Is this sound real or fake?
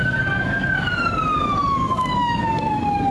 fake